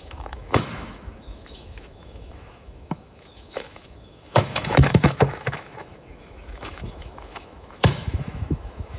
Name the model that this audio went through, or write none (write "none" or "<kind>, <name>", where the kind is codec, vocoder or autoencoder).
autoencoder, DAC-VAE